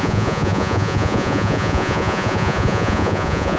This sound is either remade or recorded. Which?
remade